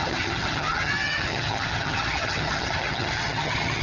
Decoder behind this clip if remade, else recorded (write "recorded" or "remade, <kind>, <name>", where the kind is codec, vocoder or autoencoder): remade, vocoder, HiFi-GAN